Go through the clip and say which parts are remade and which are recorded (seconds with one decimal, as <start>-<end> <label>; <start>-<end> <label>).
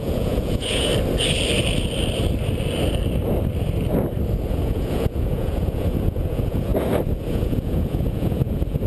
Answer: 0.0-0.9 remade; 0.9-4.5 recorded; 4.5-6.7 remade; 6.7-7.3 recorded; 7.3-8.9 remade